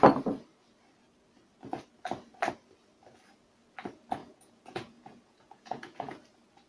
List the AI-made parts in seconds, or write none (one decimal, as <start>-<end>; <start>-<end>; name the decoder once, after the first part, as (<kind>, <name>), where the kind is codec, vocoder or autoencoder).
4.2-6.2 (vocoder, Vocos)